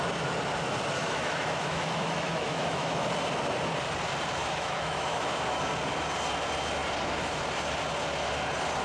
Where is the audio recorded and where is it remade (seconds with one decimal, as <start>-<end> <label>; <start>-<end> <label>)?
0.0-1.0 recorded; 1.0-3.1 remade; 3.1-4.4 recorded; 4.4-5.6 remade; 5.6-8.8 recorded